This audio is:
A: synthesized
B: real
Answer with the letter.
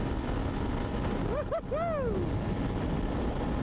B